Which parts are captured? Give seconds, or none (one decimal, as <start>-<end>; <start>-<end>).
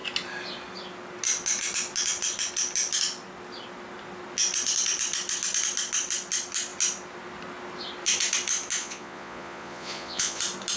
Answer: 0.0-8.8; 10.4-10.8